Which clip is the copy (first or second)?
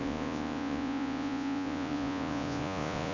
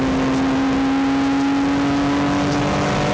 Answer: first